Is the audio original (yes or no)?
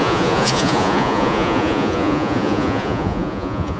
no